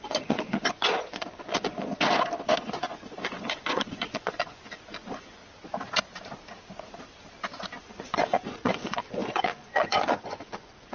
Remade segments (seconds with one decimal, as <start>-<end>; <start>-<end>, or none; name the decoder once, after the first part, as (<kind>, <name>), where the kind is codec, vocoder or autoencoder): 0.0-1.9 (vocoder, Vocos); 2.6-5.4; 7.8-10.9